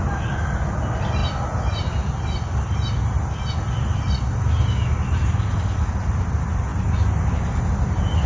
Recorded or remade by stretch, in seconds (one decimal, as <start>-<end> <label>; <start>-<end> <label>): 0.0-8.3 recorded